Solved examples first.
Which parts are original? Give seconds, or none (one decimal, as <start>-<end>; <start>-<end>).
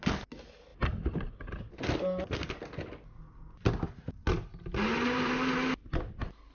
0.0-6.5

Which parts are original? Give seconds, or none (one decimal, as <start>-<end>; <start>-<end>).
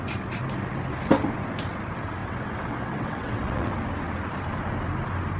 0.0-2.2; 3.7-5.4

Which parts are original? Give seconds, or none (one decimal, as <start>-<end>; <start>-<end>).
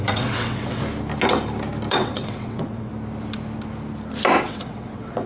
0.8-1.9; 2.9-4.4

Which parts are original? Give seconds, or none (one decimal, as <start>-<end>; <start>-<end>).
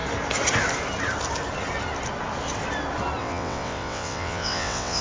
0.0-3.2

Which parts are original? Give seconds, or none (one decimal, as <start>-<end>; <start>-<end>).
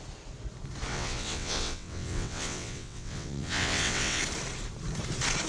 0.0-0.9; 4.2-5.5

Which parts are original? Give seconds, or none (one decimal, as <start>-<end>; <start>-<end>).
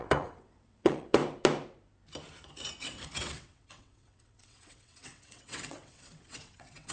1.2-2.8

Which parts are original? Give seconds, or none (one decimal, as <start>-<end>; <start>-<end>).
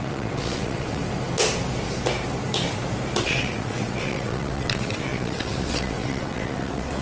1.0-3.2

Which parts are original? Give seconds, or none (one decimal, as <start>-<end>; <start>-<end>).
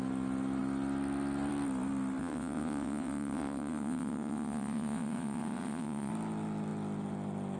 0.0-2.2; 6.1-7.6